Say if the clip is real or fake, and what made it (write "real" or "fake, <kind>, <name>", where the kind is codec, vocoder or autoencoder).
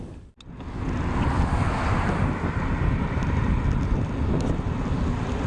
real